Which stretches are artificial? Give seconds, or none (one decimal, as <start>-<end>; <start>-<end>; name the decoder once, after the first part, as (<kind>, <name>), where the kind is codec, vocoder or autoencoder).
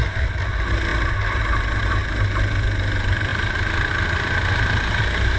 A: none